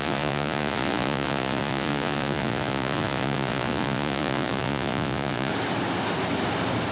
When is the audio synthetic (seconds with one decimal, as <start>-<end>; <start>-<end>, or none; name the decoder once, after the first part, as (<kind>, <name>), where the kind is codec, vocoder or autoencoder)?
0.0-5.5 (vocoder, Vocos)